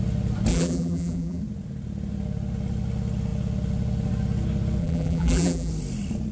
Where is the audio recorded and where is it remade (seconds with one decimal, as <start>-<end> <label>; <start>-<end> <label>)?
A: 0.0-0.5 recorded; 0.5-1.4 remade; 1.4-4.8 recorded; 4.8-5.7 remade; 5.7-6.3 recorded